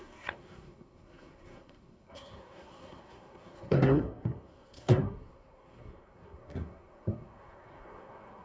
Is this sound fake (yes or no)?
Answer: yes